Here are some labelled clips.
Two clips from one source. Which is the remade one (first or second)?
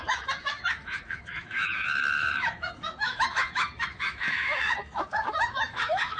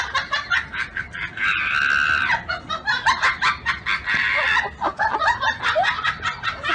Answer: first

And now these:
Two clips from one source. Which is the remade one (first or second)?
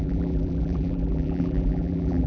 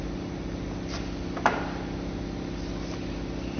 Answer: first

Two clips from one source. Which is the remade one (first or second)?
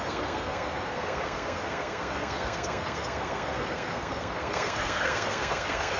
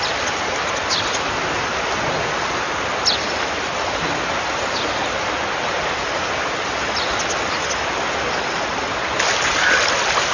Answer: first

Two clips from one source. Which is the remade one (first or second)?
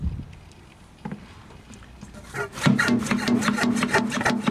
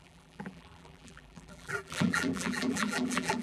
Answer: second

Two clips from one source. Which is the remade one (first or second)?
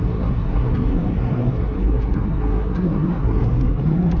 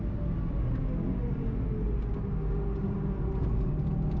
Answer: first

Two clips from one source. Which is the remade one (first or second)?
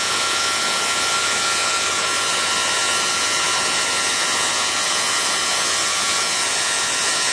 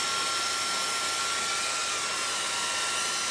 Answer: first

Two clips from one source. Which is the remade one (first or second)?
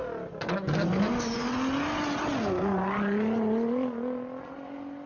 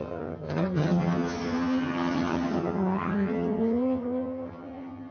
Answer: second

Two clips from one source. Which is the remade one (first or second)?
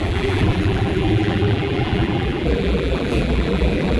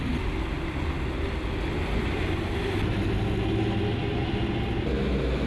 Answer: first